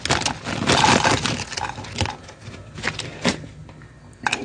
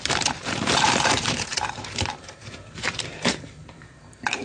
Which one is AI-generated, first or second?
second